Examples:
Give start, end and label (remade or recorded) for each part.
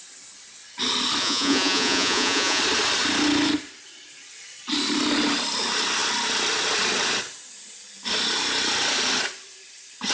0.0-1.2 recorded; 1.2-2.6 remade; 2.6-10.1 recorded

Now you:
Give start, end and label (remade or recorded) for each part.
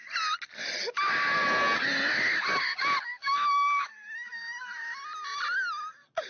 0.0-3.2 recorded; 3.2-3.9 remade; 3.9-6.3 recorded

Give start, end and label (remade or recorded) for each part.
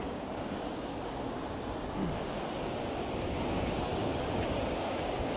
0.0-0.9 remade; 0.9-3.5 recorded; 3.5-5.4 remade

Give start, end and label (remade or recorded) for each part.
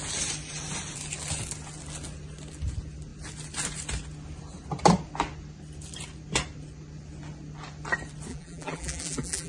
0.0-8.3 recorded; 8.3-9.5 remade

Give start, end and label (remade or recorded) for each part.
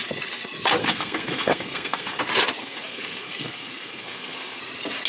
0.0-0.8 recorded; 0.8-2.2 remade; 2.2-2.6 recorded; 2.6-4.6 remade; 4.6-5.1 recorded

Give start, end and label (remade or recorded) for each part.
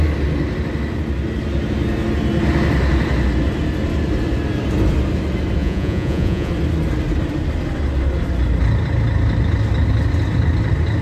0.0-5.6 recorded; 5.6-6.5 remade; 6.5-11.0 recorded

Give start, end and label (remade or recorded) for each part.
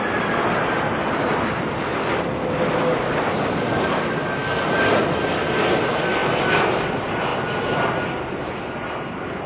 0.0-9.5 recorded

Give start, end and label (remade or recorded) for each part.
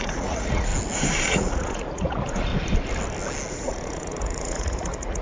0.0-0.7 remade; 0.7-1.3 recorded; 1.3-2.5 remade; 2.5-3.5 recorded; 3.5-5.2 remade